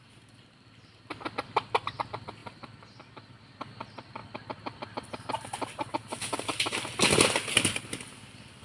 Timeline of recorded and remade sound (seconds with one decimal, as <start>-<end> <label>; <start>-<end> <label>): 0.0-8.6 recorded